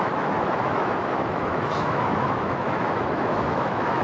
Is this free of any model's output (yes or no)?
no